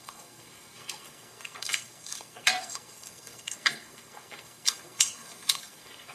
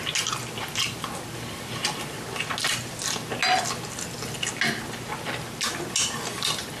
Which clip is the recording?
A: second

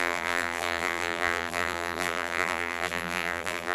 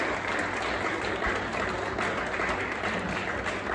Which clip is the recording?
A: second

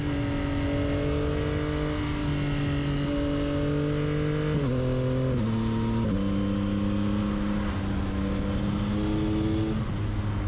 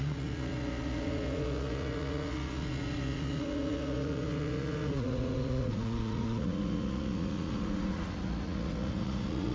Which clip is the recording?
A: first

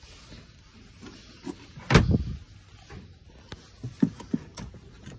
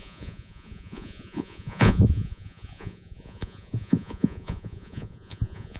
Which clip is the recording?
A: first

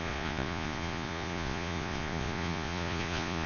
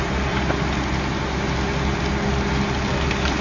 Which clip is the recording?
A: second